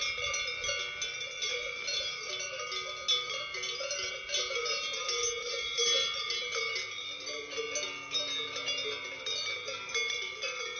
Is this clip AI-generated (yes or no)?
no